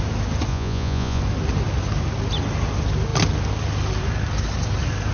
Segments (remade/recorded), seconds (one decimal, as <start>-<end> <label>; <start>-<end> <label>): 0.0-0.5 recorded; 0.5-1.2 remade; 1.2-5.1 recorded